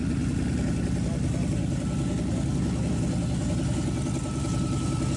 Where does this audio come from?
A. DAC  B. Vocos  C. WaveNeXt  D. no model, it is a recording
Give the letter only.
D